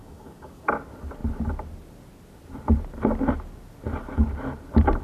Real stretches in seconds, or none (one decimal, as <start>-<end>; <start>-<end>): 0.7-5.0